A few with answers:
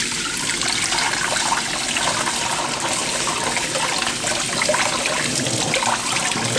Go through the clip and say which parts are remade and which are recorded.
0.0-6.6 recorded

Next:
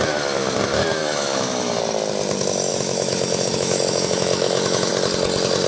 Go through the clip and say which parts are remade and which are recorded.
0.0-1.0 recorded; 1.0-1.8 remade; 1.8-2.7 recorded; 2.7-4.9 remade; 4.9-5.7 recorded

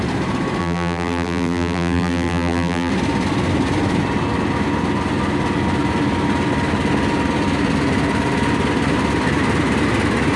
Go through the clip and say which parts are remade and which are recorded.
0.0-0.6 recorded; 0.6-2.9 remade; 2.9-10.4 recorded

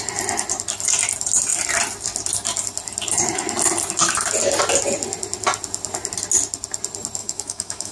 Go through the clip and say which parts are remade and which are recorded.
0.0-7.2 recorded; 7.2-7.9 remade